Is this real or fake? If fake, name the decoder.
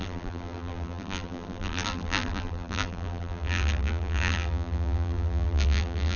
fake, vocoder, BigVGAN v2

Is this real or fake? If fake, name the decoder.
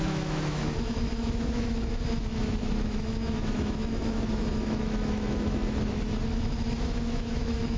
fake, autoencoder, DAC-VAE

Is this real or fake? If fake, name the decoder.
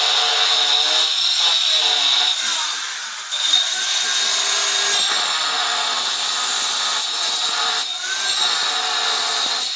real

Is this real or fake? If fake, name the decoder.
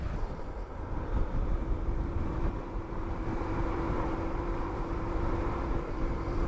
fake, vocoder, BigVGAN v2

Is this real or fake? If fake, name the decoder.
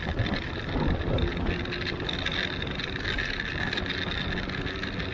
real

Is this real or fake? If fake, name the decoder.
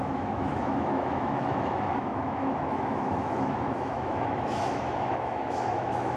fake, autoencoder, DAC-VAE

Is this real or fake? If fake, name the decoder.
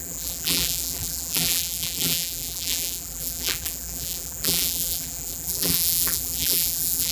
fake, vocoder, BigVGAN v2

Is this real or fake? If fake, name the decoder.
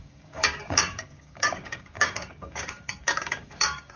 fake, codec, DAC